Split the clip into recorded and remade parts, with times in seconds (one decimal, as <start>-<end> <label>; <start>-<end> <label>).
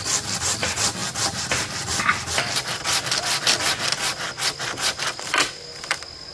0.0-6.3 recorded